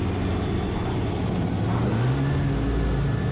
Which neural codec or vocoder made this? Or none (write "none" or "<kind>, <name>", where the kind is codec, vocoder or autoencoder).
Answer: none